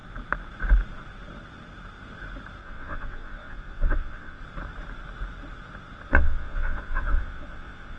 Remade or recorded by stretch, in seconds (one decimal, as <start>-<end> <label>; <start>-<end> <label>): 0.0-2.6 recorded; 2.6-4.4 remade; 4.4-6.1 recorded; 6.1-8.0 remade